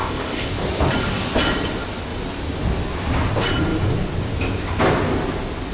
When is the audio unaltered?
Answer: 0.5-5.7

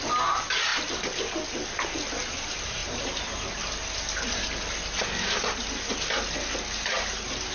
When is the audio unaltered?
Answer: 0.0-7.5

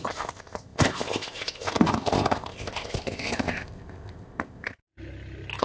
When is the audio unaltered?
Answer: 4.8-5.6

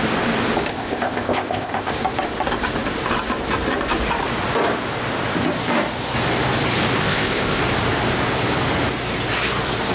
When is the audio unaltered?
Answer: 0.0-0.7; 1.9-7.0; 7.6-9.9

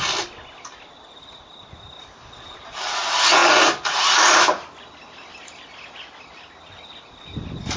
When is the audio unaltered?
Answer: 0.0-7.8